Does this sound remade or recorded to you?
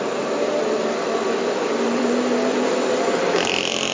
remade